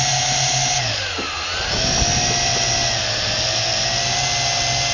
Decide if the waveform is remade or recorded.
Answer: recorded